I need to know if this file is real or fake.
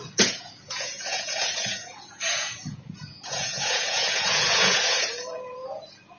fake